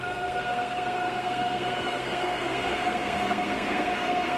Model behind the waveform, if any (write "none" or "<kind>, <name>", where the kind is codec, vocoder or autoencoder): codec, SNAC